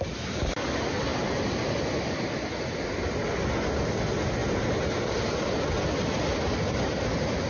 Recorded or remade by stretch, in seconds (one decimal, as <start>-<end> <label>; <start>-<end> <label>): 0.0-7.5 recorded